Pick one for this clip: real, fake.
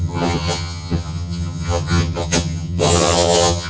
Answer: fake